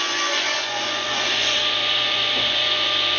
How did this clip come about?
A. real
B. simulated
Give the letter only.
B